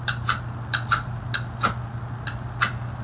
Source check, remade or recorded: recorded